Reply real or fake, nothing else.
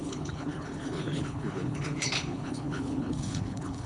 fake